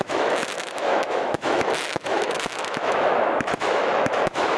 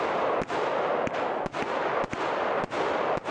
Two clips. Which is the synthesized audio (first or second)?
first